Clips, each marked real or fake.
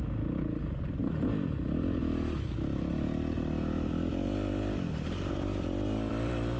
real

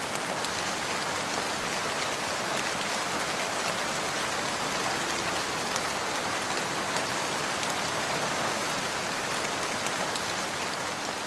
real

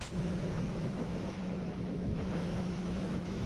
fake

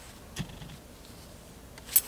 real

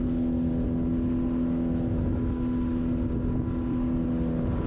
real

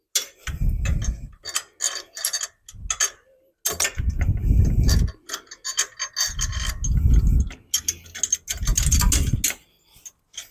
real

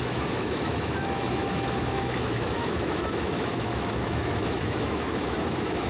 fake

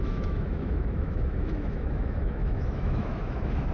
fake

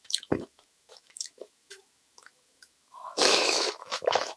fake